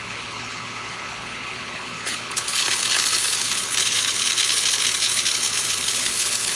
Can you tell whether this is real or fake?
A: fake